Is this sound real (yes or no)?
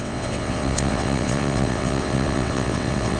no